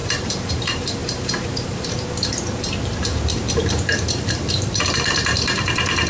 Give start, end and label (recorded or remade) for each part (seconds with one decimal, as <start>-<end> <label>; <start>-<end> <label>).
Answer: 0.0-6.1 remade